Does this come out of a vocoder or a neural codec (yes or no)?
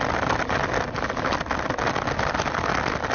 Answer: no